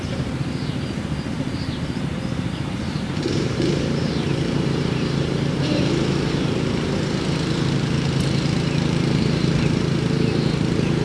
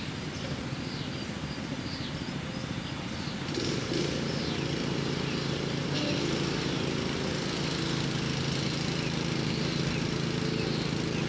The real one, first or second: second